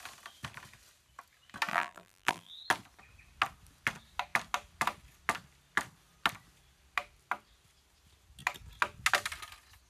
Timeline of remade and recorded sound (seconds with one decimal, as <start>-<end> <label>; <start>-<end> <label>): 0.0-1.7 recorded; 1.7-2.5 remade; 2.5-9.9 recorded